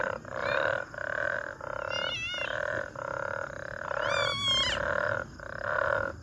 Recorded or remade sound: recorded